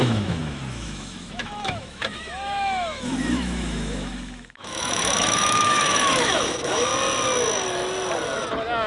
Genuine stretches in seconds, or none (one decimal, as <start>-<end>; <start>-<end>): 6.9-8.9

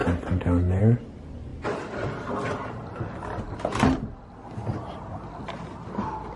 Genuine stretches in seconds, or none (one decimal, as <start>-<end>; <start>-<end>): 0.0-6.4